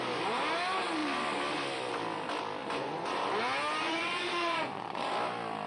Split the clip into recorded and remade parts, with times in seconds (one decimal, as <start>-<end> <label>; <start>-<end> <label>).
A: 0.0-2.6 recorded; 2.6-3.3 remade; 3.3-3.8 recorded; 3.8-5.1 remade; 5.1-5.7 recorded